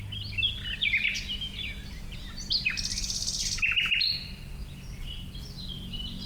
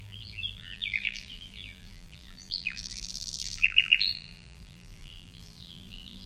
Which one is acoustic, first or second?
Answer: first